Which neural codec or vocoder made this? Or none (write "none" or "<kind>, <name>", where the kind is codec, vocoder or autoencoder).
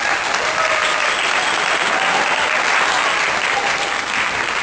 none